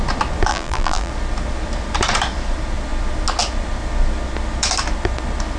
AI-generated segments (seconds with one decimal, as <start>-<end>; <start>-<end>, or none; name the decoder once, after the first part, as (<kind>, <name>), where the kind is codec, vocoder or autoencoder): 0.5-1.1 (vocoder, BigVGAN v2)